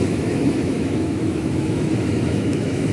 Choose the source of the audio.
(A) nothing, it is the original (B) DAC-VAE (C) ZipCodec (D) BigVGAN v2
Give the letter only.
B